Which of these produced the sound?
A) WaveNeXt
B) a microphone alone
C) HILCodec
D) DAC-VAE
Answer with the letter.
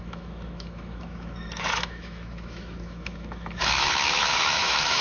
D